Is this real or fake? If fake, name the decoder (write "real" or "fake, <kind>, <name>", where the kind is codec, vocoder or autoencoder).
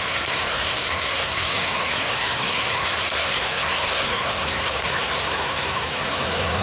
fake, codec, SNAC